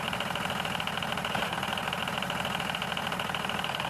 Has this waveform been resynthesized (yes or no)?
no